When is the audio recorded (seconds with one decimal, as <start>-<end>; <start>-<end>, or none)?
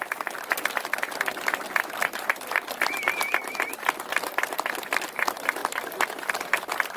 0.0-7.0